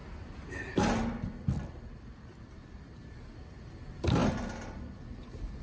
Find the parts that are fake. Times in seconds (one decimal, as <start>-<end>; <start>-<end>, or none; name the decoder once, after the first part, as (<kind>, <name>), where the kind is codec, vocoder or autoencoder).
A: 3.4-4.2 (vocoder, BigVGAN v2)